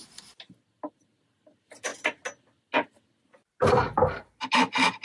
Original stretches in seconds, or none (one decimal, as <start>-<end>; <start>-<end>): 0.0-5.0